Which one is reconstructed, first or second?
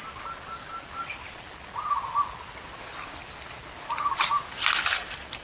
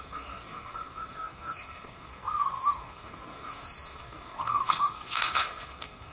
second